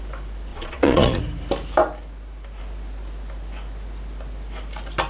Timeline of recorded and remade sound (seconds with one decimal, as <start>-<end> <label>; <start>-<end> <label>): 0.0-0.5 recorded; 0.5-1.2 remade; 1.2-5.1 recorded